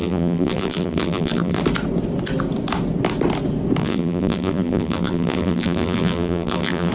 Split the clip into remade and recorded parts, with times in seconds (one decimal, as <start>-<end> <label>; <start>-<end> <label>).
0.0-1.6 remade; 1.6-3.8 recorded; 3.8-6.9 remade